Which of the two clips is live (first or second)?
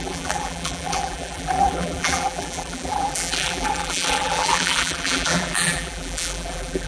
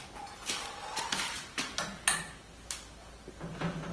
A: second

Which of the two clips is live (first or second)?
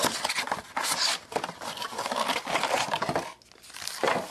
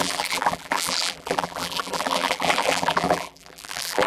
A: first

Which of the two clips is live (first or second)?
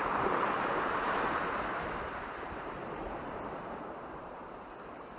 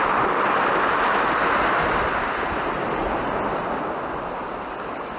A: second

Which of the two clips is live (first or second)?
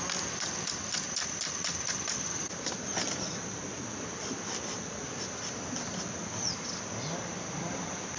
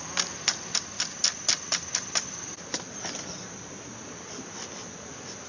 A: second